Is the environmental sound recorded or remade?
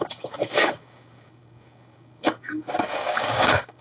remade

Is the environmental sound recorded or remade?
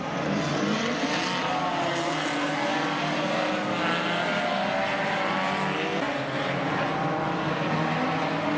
recorded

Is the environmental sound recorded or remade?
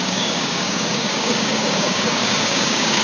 remade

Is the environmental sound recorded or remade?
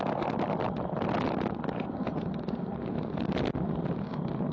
recorded